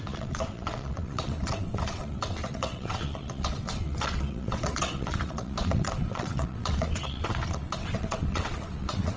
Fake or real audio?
fake